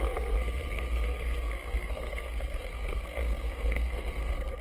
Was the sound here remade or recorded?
remade